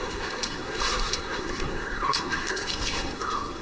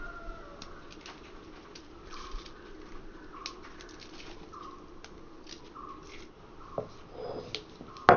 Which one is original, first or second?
second